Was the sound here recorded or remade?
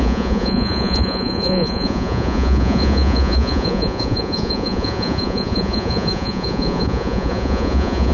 remade